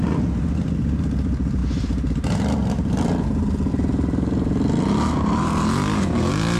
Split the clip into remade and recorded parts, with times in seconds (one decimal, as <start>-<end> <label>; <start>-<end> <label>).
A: 0.0-6.6 recorded

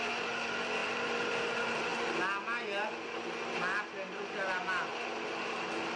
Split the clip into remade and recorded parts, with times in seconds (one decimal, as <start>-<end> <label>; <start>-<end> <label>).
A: 0.0-6.0 recorded